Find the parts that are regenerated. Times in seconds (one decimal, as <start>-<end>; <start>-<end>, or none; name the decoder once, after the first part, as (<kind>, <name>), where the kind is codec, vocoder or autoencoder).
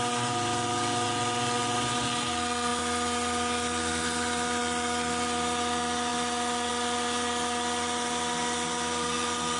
none